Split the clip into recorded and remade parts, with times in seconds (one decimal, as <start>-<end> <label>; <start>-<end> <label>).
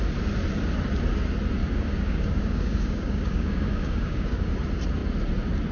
0.0-1.6 recorded; 1.6-4.5 remade; 4.5-5.7 recorded